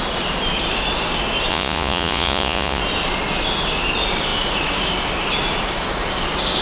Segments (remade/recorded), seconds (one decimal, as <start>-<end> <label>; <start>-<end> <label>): 0.0-1.5 recorded; 1.5-2.8 remade; 2.8-6.6 recorded